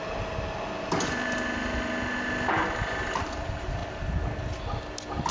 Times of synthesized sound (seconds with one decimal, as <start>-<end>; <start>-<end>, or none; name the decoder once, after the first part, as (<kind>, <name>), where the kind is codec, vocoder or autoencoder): none